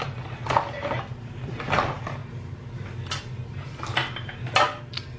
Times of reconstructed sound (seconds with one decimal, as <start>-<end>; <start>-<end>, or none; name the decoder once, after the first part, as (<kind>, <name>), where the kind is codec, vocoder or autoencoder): none